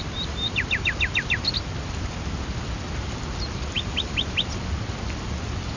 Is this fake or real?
real